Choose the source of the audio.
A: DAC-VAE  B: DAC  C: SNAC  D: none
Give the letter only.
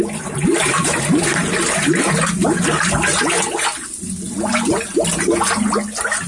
D